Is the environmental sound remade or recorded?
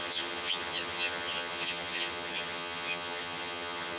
remade